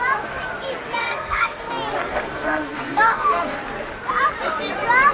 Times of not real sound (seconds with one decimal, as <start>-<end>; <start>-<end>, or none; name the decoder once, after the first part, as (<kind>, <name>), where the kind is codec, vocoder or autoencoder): 1.0-1.7 (codec, SNAC); 2.1-3.6